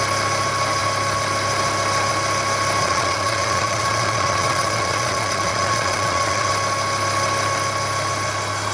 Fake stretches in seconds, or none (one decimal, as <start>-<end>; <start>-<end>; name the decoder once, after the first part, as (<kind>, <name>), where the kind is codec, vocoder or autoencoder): 2.8-6.5 (vocoder, Vocos)